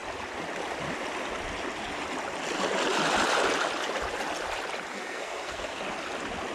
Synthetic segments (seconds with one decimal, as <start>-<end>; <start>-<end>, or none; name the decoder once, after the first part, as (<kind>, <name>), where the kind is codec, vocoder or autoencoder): 4.9-5.8 (codec, SNAC)